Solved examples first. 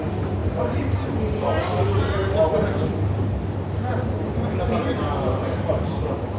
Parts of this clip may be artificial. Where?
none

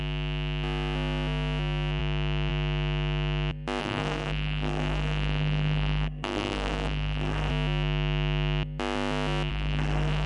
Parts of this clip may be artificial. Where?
3.8-7.5 (codec, SNAC); 9.5-10.3

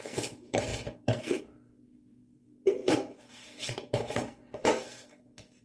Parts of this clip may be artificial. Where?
0.0-5.6 (codec, SNAC)